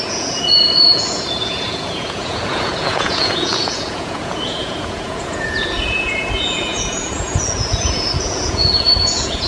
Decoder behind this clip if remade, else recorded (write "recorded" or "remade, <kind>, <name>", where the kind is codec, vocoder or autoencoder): remade, vocoder, Vocos